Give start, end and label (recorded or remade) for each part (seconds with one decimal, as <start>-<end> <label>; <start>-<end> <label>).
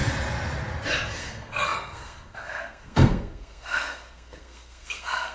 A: 0.0-1.2 recorded; 1.2-5.3 remade